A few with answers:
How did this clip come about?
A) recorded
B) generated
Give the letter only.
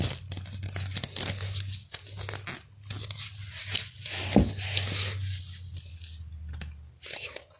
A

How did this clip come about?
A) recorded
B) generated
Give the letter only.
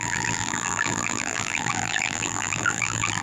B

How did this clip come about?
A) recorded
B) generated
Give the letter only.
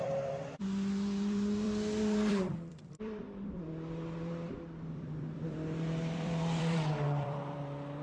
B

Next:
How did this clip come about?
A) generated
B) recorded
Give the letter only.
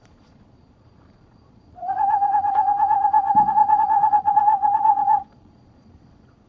A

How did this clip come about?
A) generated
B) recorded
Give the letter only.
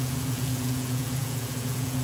A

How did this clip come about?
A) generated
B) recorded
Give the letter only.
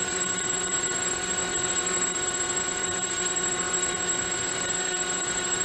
A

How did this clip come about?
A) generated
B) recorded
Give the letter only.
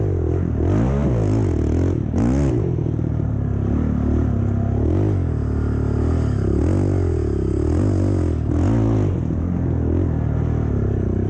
B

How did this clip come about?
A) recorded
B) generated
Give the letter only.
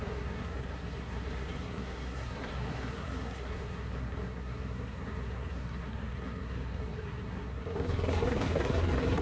B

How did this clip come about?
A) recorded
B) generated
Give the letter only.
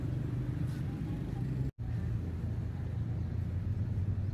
A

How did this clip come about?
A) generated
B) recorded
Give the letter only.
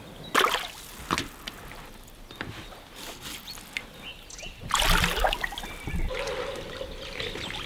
B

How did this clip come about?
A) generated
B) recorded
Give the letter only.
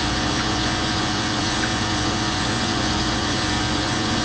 A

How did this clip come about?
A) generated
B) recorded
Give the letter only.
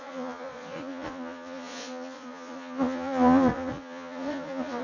A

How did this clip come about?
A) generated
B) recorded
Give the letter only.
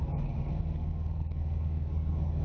A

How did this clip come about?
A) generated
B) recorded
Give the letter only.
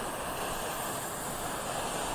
B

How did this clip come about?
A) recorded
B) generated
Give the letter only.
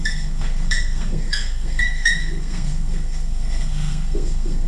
B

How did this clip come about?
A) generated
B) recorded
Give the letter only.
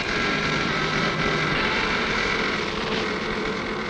A